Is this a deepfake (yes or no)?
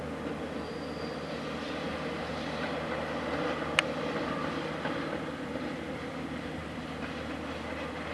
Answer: no